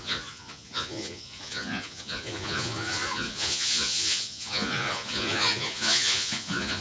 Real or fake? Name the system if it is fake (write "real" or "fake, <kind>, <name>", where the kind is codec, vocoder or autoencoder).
fake, vocoder, Vocos